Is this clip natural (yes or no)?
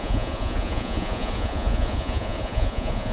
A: no